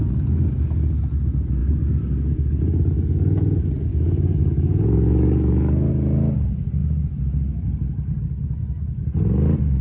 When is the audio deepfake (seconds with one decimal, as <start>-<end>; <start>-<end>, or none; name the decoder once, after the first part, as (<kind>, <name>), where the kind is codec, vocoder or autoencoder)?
1.6-2.6 (codec, DAC); 3.9-5.9